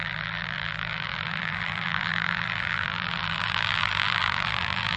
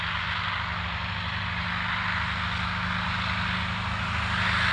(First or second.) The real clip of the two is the second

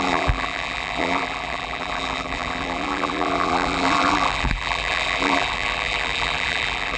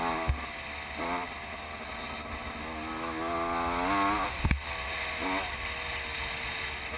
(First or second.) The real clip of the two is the second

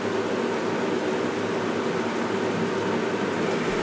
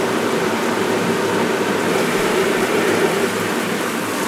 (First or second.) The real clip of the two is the first